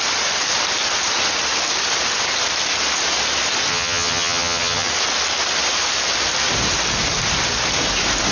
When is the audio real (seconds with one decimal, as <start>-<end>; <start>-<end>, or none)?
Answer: 0.0-3.7; 4.9-8.3